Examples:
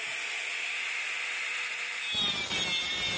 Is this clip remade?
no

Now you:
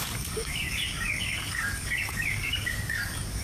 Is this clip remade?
yes